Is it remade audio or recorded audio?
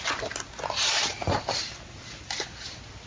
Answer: recorded